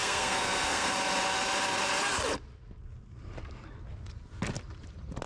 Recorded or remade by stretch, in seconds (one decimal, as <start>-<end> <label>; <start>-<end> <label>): 0.0-0.9 remade; 0.9-5.3 recorded